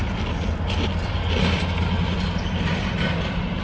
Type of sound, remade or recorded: recorded